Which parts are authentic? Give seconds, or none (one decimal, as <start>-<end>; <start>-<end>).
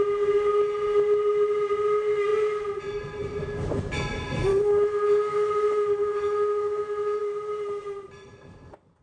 0.0-4.5; 7.2-9.0